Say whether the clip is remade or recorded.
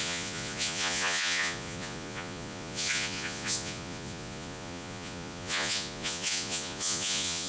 remade